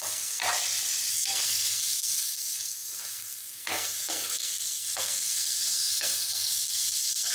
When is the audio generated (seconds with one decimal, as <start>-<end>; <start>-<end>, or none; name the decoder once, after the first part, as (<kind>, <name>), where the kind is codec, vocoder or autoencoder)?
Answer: 0.0-0.4 (codec, SNAC); 1.1-7.3